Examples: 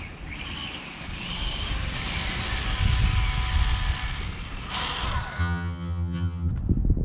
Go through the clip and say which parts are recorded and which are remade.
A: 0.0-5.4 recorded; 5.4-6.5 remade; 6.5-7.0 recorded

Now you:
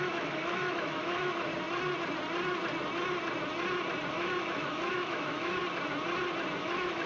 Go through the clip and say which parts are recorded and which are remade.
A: 0.0-1.5 remade; 1.5-4.1 recorded; 4.1-5.6 remade; 5.6-6.6 recorded; 6.6-7.1 remade

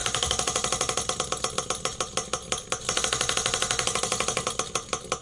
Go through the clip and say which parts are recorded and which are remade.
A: 0.0-5.2 recorded

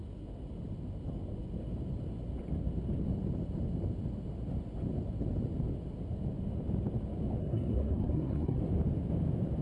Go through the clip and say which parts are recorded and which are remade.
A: 0.0-7.4 recorded; 7.4-8.6 remade; 8.6-9.6 recorded

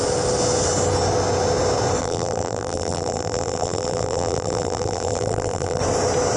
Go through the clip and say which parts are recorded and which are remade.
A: 0.0-2.0 recorded; 2.0-5.8 remade; 5.8-6.4 recorded